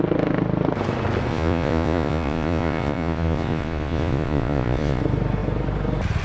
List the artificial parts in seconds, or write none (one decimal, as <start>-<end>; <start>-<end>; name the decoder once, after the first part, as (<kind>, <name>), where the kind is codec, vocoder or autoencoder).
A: 1.3-5.0 (vocoder, Vocos)